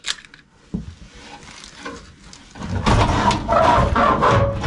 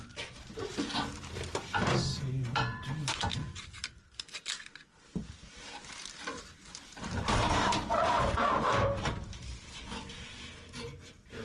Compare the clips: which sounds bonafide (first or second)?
first